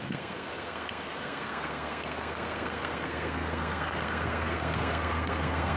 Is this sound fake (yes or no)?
yes